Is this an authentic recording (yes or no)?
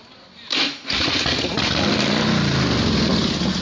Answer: yes